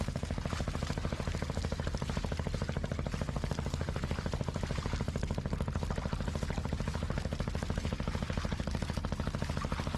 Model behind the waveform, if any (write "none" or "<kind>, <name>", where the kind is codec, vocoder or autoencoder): none